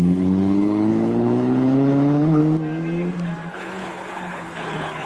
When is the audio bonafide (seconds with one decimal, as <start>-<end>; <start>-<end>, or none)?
2.4-3.5